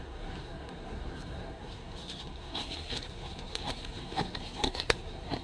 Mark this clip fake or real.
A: fake